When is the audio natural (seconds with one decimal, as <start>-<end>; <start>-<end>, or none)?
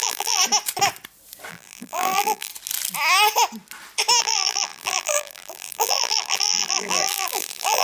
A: 0.4-1.5; 2.5-4.2